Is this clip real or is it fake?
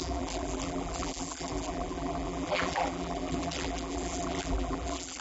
fake